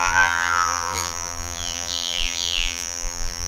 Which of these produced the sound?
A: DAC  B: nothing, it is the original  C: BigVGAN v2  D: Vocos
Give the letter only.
C